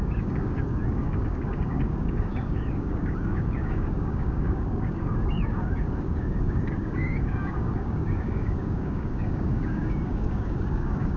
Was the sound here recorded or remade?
remade